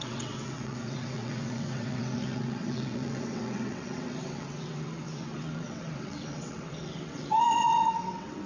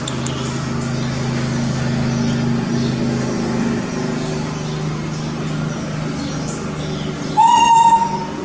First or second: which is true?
second